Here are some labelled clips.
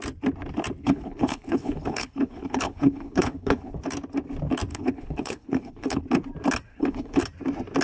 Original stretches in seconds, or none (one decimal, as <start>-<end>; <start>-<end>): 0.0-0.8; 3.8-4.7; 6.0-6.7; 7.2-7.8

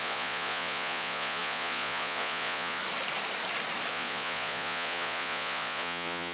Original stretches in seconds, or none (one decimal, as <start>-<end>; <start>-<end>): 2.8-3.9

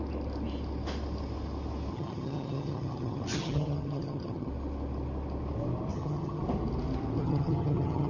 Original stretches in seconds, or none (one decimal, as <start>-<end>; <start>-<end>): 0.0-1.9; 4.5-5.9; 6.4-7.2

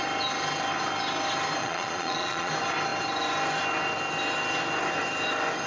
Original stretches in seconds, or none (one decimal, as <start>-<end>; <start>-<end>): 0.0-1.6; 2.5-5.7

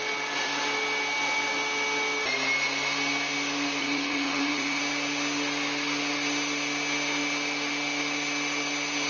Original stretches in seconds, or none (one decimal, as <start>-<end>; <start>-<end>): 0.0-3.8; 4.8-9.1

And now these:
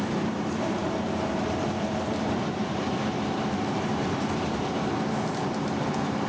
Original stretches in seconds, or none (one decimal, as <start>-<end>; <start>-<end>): none

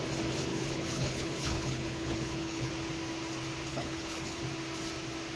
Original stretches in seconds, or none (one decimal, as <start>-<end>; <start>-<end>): 0.0-0.5; 2.7-3.7; 4.4-5.4